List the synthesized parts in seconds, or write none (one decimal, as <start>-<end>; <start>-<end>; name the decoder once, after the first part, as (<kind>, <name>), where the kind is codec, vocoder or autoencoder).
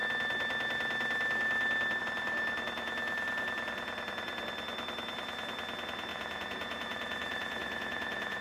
6.1-8.4 (vocoder, Vocos)